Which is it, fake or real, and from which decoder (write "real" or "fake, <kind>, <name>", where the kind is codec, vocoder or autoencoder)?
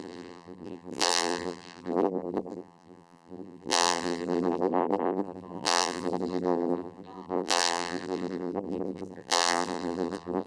fake, vocoder, BigVGAN v2